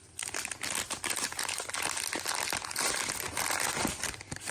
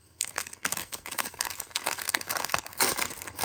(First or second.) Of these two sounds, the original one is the first